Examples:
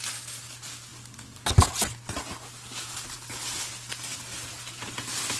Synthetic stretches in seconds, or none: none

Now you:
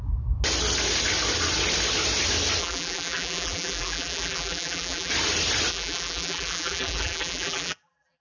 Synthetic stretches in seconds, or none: 2.6-5.1 (vocoder, BigVGAN v2); 5.7-8.2

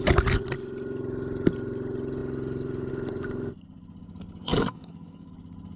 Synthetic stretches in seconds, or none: 4.5-5.3 (codec, DAC)

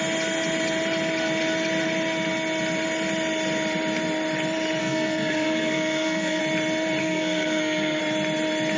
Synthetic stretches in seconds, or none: 4.8-6.4 (codec, SNAC); 7.0-8.0

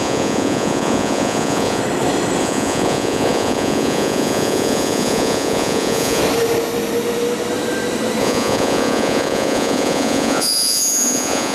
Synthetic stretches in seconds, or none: 0.0-1.8 (vocoder, Vocos); 2.4-6.2; 8.2-11.5

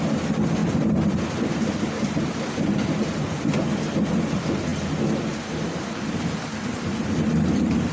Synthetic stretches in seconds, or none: none

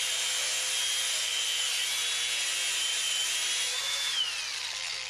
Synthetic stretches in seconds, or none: 3.7-4.2 (autoencoder, DAC-VAE)

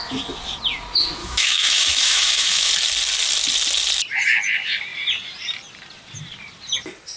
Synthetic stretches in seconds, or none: 1.2-2.7 (autoencoder, DAC-VAE)